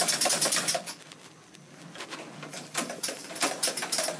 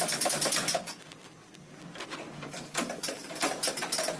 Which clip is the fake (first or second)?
first